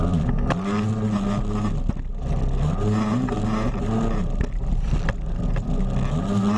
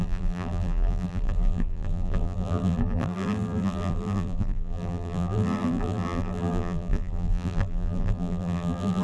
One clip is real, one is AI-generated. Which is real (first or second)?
first